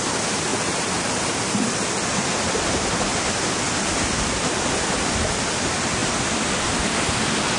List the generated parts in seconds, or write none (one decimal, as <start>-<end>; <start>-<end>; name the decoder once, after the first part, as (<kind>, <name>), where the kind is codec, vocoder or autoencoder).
0.5-1.7 (vocoder, BigVGAN v2)